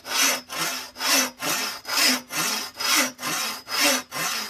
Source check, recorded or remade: recorded